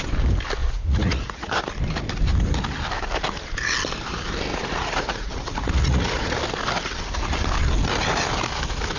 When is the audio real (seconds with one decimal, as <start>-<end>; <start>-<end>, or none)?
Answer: 0.0-0.6; 1.5-4.5; 6.4-9.0